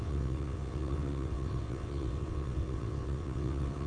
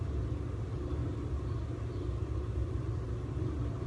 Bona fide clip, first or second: second